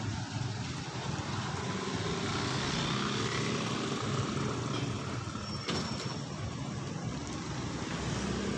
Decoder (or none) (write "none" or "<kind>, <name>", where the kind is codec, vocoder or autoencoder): none